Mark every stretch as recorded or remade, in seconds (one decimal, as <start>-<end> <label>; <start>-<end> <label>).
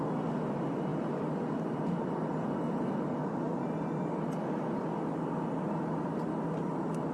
0.0-7.1 recorded